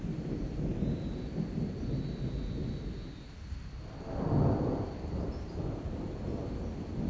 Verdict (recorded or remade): recorded